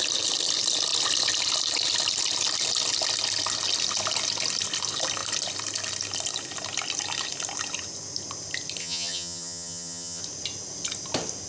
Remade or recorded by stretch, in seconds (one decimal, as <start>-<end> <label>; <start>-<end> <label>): 0.0-8.8 recorded; 8.8-10.2 remade; 10.2-11.5 recorded